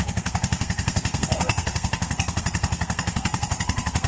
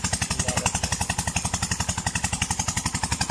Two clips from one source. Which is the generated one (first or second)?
first